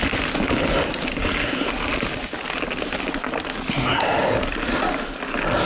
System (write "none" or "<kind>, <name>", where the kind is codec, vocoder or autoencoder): none